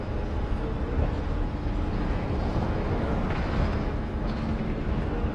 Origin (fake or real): fake